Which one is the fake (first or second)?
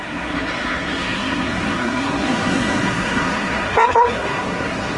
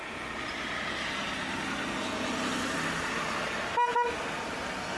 first